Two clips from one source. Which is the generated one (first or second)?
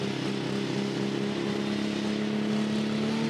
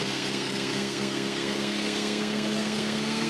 second